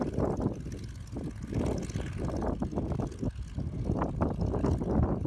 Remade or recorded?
recorded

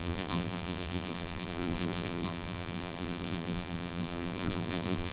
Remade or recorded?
remade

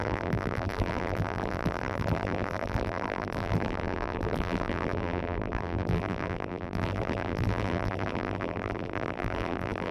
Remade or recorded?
remade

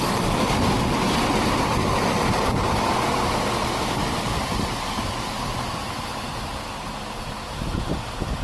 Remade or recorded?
recorded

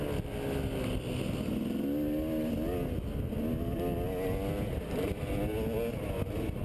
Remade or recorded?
recorded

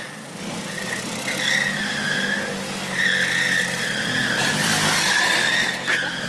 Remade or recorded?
recorded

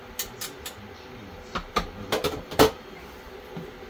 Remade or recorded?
recorded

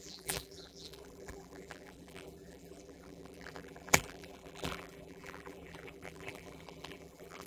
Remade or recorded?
remade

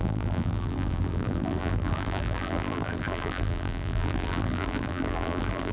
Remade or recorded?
remade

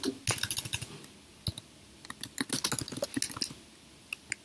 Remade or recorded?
recorded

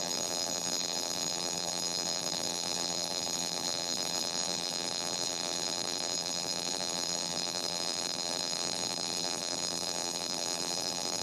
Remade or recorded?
remade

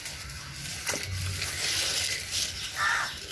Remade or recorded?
recorded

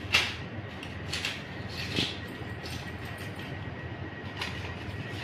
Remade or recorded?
recorded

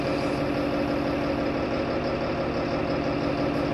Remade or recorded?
recorded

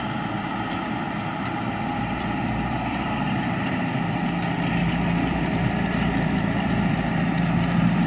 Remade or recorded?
remade